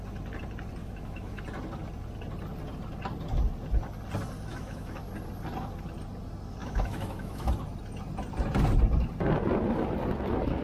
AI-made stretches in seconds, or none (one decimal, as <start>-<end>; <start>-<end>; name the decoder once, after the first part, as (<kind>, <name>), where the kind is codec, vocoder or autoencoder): 0.8-1.4 (autoencoder, DAC-VAE); 4.5-5.0; 6.6-7.5